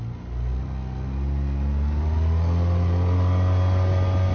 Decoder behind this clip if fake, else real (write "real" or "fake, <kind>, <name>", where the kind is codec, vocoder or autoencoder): real